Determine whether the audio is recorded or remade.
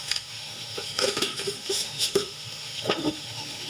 remade